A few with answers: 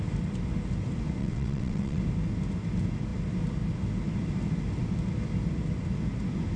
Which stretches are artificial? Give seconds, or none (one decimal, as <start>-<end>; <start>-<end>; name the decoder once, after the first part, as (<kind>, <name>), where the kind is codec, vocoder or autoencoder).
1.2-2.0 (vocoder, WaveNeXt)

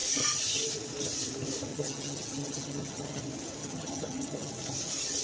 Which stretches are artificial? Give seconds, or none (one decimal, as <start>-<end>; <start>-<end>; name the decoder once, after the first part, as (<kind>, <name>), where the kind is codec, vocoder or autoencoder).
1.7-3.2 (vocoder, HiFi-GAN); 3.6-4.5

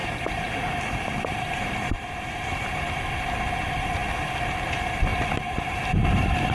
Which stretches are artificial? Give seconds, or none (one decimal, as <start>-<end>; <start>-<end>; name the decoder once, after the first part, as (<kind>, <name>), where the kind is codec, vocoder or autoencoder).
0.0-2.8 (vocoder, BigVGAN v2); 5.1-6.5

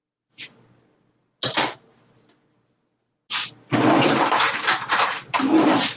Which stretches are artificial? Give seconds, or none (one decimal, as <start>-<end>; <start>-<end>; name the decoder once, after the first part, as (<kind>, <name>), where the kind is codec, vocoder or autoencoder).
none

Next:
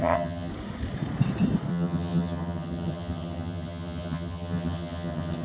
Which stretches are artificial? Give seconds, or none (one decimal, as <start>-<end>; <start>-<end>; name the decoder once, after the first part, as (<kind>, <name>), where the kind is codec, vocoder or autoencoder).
0.0-0.5 (vocoder, HiFi-GAN); 1.7-5.4